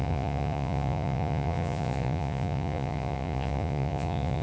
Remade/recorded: remade